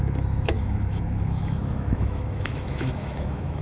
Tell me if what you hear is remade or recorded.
remade